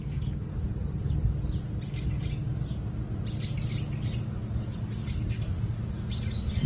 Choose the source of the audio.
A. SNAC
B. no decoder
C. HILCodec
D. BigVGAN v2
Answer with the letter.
B